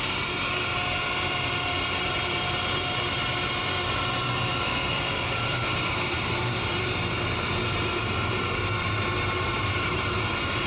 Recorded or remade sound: remade